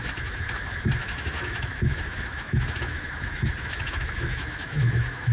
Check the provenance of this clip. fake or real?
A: fake